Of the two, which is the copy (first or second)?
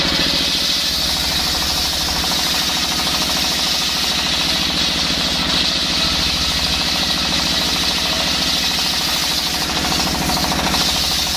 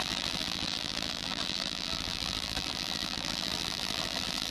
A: second